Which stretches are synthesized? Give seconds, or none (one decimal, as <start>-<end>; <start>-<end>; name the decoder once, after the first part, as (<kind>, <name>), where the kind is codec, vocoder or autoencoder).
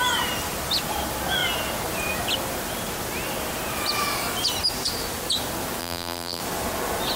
5.8-6.4 (vocoder, BigVGAN v2)